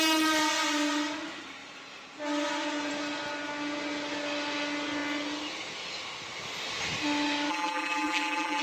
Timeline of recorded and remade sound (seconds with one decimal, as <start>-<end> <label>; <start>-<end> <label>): 0.0-7.5 recorded; 7.5-8.6 remade